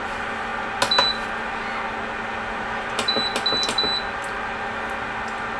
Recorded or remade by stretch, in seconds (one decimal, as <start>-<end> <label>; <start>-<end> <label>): 0.0-0.5 remade; 0.5-2.5 recorded; 2.5-3.3 remade; 3.3-5.6 recorded